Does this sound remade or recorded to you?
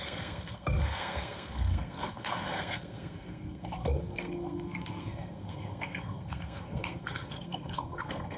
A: remade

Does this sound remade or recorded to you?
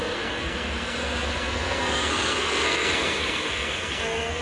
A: remade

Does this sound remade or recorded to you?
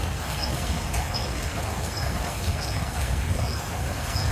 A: remade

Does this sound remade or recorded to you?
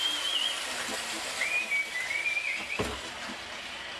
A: recorded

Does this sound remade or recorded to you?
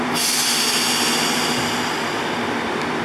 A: recorded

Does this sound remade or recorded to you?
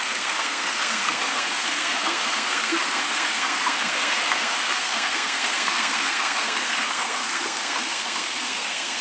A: remade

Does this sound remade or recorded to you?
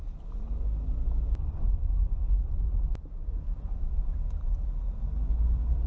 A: recorded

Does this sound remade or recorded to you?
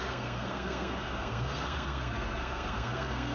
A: remade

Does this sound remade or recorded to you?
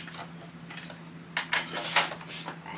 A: recorded